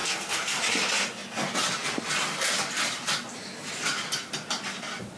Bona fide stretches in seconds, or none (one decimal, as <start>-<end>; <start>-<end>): 0.6-5.2